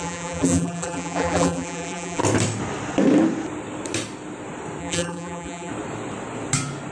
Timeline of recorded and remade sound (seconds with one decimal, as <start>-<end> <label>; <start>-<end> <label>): 0.0-2.2 remade; 2.2-4.8 recorded; 4.8-5.7 remade; 5.7-6.9 recorded